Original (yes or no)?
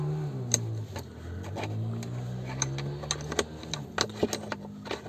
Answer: yes